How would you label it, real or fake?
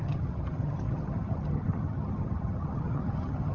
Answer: fake